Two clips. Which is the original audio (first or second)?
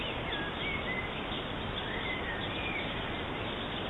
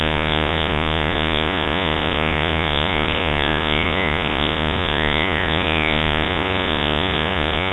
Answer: first